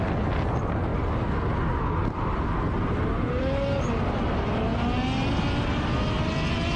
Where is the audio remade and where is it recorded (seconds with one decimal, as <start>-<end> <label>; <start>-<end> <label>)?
0.0-6.8 recorded